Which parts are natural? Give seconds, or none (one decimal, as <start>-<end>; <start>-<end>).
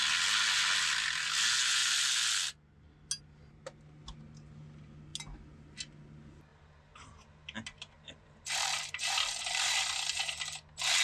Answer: 0.0-6.5; 9.8-11.0